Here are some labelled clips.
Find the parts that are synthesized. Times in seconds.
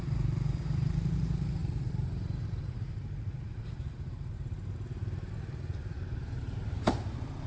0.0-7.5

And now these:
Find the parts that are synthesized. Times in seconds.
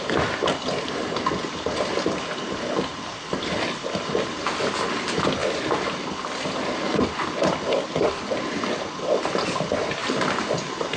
1.4-2.5; 2.9-4.1; 10.0-10.5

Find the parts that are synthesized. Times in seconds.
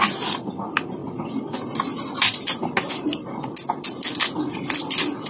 none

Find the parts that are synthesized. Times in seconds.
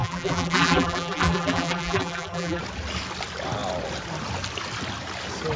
0.0-2.6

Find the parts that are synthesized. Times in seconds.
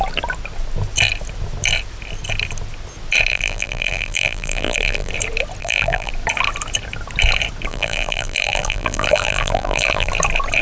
3.3-5.1; 5.6-6.1; 7.7-10.1